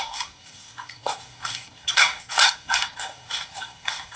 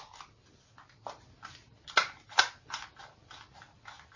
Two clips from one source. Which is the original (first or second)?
second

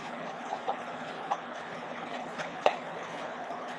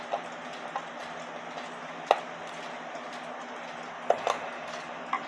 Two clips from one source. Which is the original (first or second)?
second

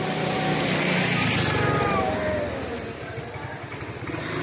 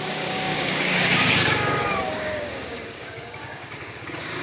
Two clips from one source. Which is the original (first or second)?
first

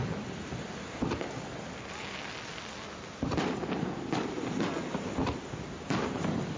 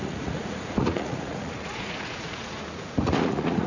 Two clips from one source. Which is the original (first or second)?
first